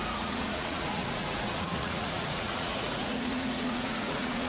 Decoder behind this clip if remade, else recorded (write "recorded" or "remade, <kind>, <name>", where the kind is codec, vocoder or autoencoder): remade, vocoder, Vocos